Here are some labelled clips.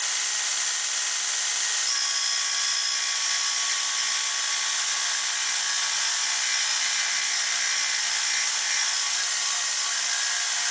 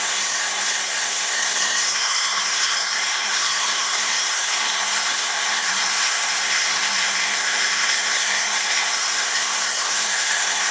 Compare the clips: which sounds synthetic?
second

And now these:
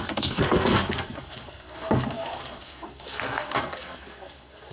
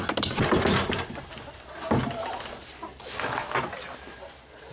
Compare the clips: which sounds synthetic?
first